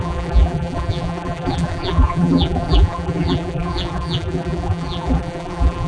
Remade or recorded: remade